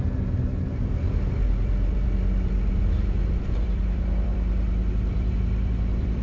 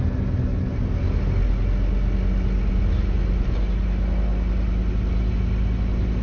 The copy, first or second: first